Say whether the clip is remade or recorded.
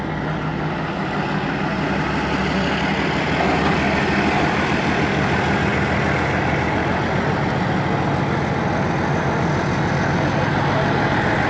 recorded